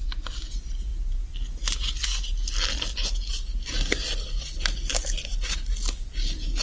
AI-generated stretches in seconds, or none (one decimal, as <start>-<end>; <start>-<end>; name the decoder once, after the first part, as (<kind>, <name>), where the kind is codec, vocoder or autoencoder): none